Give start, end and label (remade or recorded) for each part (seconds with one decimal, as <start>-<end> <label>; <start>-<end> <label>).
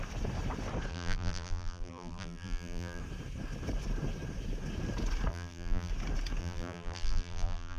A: 0.0-0.9 recorded; 0.9-3.0 remade; 3.0-5.3 recorded; 5.3-5.9 remade; 5.9-6.4 recorded; 6.4-7.8 remade